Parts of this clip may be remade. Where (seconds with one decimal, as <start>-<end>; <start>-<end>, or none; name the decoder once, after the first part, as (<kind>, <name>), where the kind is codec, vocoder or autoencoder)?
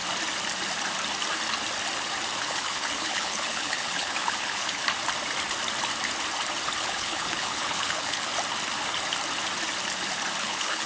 2.4-4.8 (codec, HILCodec); 6.8-8.3; 10.4-10.9